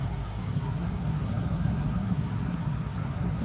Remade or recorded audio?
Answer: remade